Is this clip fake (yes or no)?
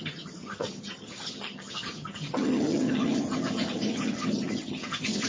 yes